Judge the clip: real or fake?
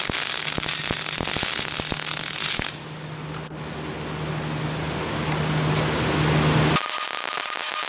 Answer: real